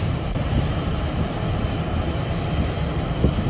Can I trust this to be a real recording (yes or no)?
yes